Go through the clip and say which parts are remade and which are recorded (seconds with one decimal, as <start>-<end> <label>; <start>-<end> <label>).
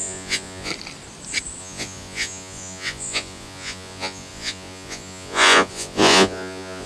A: 0.0-0.7 remade; 0.7-1.6 recorded; 1.6-6.9 remade